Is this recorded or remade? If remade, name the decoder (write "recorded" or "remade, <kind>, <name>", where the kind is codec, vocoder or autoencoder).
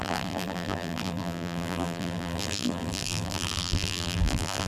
remade, vocoder, BigVGAN v2